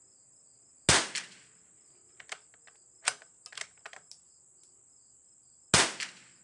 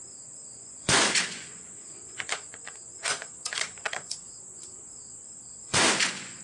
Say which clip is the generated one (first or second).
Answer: second